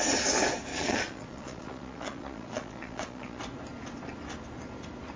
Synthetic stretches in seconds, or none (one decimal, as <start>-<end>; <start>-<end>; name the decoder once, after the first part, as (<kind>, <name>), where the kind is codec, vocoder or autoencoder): 0.7-3.4 (vocoder, Vocos)